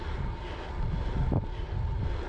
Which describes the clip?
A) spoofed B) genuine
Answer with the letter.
B